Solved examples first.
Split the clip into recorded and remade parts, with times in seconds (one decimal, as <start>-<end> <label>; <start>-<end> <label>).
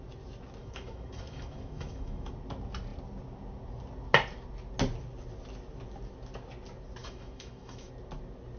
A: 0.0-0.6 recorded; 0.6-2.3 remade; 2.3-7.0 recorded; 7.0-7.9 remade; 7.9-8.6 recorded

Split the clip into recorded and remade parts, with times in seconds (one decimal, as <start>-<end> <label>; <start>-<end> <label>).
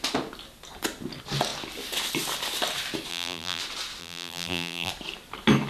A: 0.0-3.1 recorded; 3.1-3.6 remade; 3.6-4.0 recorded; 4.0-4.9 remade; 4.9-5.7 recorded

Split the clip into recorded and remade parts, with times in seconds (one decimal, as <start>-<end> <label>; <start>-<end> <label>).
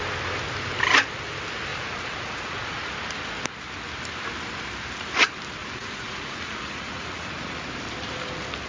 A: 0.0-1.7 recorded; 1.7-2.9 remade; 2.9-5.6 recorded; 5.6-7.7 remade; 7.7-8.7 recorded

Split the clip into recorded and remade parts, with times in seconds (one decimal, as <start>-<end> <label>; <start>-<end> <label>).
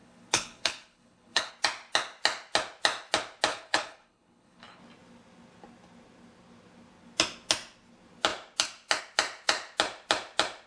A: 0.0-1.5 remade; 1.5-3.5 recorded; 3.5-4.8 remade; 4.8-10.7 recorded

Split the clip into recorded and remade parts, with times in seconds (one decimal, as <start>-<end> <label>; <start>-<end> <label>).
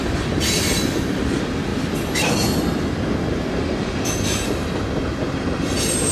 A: 0.0-6.1 recorded